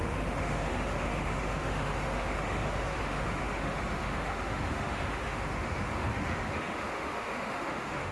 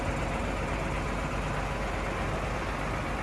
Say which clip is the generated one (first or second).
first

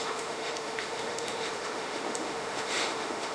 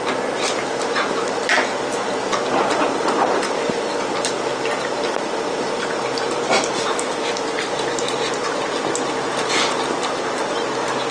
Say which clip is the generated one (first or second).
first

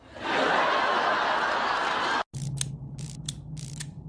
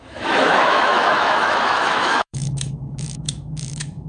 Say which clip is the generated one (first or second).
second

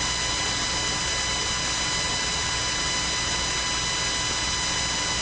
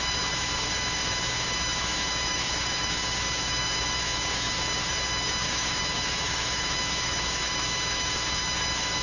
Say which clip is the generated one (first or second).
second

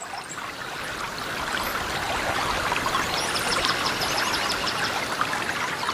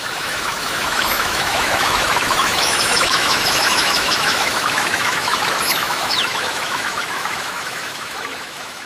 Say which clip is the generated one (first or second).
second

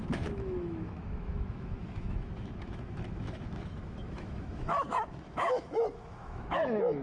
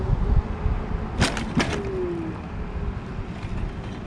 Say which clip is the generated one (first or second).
first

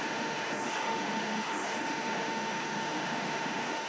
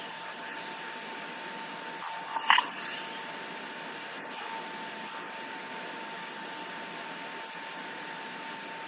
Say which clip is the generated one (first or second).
first